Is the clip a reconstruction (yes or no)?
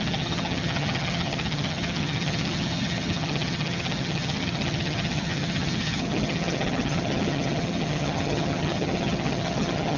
yes